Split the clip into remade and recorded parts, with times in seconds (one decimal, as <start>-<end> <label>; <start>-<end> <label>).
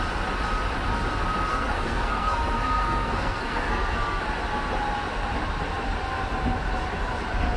0.0-1.5 recorded; 1.5-4.2 remade; 4.2-7.6 recorded